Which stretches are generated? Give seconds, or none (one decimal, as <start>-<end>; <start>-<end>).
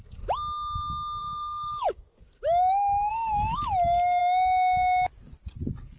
1.2-2.3; 3.1-3.6